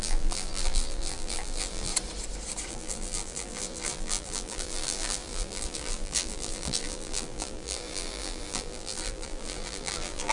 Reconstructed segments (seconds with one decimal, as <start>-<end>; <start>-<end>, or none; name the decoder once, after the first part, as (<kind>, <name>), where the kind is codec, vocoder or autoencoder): 0.0-1.9 (vocoder, BigVGAN v2); 2.7-10.3